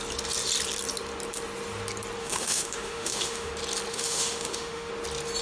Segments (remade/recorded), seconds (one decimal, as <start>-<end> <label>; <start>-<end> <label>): 0.0-2.2 recorded; 2.2-3.5 remade; 3.5-3.9 recorded; 3.9-4.9 remade; 4.9-5.4 recorded